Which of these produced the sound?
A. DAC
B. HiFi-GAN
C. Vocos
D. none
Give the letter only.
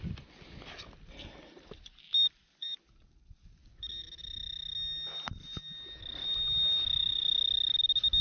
D